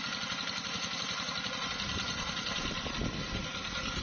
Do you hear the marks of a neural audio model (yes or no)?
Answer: no